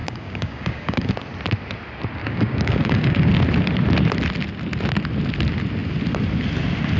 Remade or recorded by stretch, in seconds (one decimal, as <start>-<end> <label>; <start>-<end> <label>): 0.0-1.1 remade; 1.1-2.2 recorded; 2.2-3.3 remade; 3.3-7.0 recorded